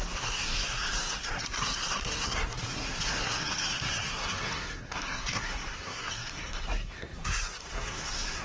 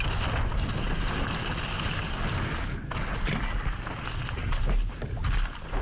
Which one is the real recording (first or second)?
second